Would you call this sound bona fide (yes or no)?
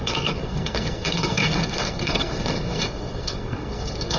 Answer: no